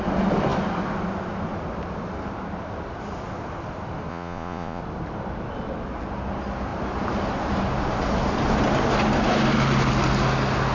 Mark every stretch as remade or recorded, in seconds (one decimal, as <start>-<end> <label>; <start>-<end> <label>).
0.0-4.1 recorded; 4.1-4.8 remade; 4.8-10.7 recorded